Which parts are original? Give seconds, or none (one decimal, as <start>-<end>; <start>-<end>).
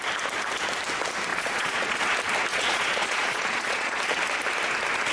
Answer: 0.0-1.3; 2.0-2.5; 4.0-5.1